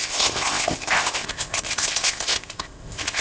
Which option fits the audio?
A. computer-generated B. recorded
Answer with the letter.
A